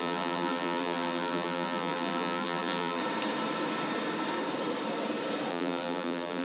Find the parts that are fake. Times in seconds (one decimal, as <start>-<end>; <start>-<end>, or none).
0.0-3.0; 5.5-6.4